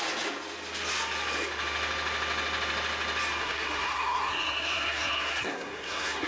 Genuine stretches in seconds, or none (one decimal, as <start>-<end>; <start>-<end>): 0.0-3.4